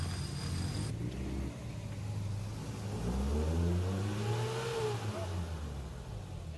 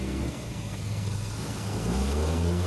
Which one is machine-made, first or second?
second